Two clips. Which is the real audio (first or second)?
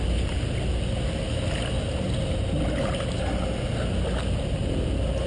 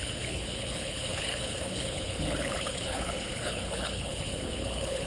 first